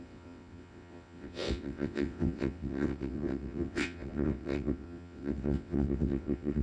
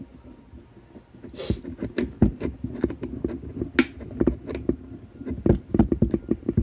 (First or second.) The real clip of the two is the second